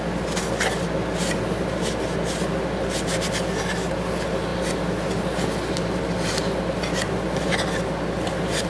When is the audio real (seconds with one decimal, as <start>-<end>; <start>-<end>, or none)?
0.0-8.7